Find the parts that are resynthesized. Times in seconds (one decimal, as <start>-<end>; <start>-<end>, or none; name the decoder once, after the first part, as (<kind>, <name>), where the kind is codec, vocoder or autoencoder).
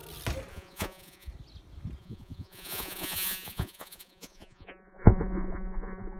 0.5-1.3 (vocoder, Vocos); 2.0-6.2